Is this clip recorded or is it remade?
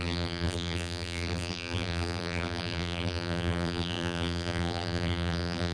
remade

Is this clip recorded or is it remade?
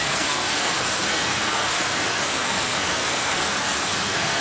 remade